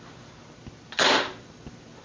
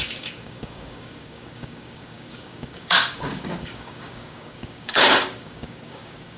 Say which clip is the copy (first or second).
second